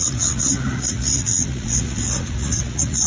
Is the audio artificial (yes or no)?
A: yes